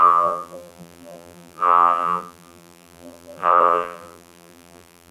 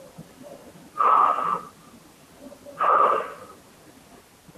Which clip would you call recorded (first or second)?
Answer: second